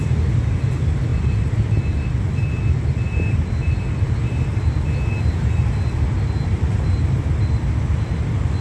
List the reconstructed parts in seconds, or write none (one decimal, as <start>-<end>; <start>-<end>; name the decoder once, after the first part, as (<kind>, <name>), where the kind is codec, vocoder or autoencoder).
none